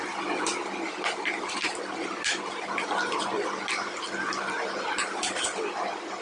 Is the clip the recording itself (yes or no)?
yes